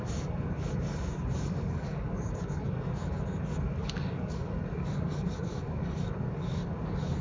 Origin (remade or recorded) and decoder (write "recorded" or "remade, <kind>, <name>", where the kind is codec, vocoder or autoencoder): remade, codec, DAC